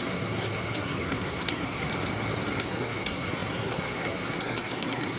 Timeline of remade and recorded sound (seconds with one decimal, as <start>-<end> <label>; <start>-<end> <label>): 0.0-1.9 remade; 1.9-2.6 recorded; 2.6-5.2 remade

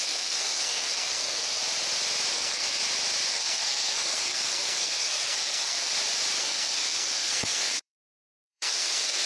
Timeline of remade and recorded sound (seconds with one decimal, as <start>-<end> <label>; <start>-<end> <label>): 0.0-1.6 remade; 1.6-2.3 recorded; 2.3-2.8 remade; 2.8-3.3 recorded; 3.3-5.9 remade; 5.9-6.4 recorded; 6.4-9.3 remade

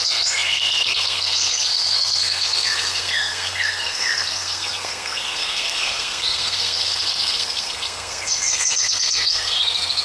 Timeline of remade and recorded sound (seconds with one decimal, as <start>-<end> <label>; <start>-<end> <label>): 0.0-10.0 remade